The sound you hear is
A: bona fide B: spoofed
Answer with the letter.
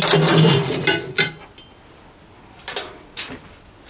A